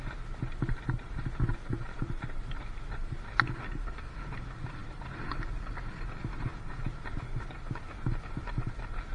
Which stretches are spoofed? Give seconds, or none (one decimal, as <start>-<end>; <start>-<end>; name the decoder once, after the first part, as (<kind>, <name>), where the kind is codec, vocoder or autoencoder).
none